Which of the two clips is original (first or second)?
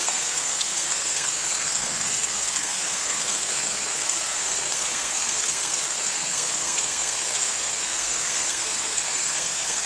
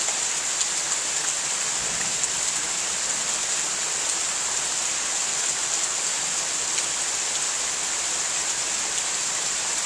second